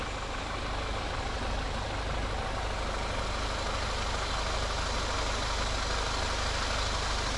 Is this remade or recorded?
recorded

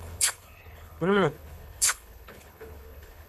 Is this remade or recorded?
remade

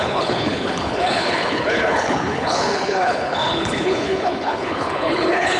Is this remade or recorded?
remade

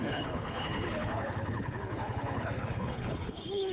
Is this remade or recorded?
remade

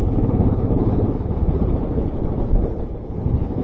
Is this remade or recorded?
remade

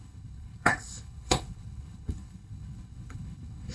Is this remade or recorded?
remade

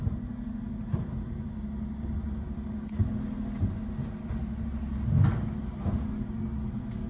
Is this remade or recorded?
recorded